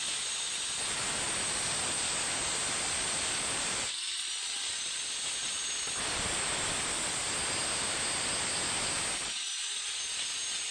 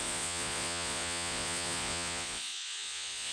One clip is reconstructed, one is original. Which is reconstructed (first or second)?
second